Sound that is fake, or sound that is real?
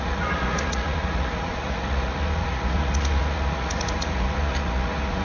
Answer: fake